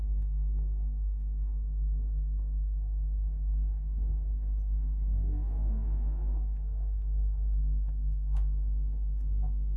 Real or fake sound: fake